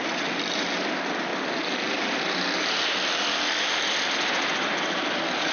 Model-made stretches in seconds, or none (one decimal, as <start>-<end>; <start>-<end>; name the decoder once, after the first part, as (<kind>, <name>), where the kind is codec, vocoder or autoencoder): none